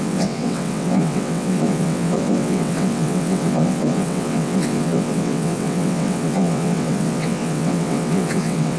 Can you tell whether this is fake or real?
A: fake